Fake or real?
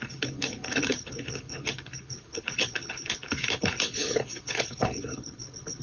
fake